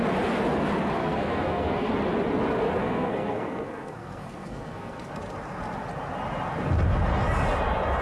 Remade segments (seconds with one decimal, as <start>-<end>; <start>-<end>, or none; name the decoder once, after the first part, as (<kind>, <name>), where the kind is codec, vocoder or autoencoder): 1.0-1.9 (codec, SNAC); 2.8-5.1